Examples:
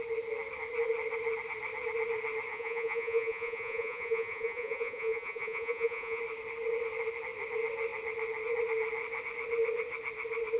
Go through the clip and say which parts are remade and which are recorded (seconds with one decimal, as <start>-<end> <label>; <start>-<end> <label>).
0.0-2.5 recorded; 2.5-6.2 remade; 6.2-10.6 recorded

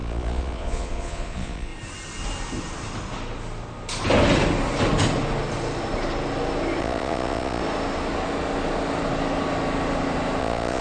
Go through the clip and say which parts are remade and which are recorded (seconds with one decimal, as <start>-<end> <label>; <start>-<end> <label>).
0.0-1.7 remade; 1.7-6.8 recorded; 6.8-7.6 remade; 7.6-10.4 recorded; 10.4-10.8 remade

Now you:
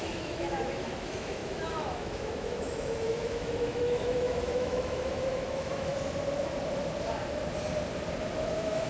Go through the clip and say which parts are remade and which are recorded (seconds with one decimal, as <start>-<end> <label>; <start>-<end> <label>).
0.0-5.9 remade; 5.9-8.3 recorded; 8.3-8.9 remade

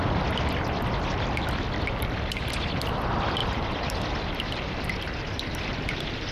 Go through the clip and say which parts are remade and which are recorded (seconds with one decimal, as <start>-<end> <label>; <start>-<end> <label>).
0.0-3.4 recorded; 3.4-6.3 remade

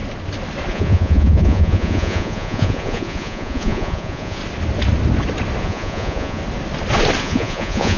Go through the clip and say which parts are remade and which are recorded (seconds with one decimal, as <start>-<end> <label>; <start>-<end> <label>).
0.0-0.7 recorded; 0.7-4.4 remade; 4.4-5.6 recorded; 5.6-6.4 remade; 6.4-7.2 recorded; 7.2-8.0 remade